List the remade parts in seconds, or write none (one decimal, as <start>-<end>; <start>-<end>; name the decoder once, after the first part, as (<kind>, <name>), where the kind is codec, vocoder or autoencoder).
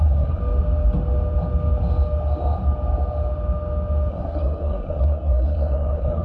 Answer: 0.0-0.4 (codec, SNAC); 4.1-6.2